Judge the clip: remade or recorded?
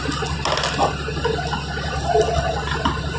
recorded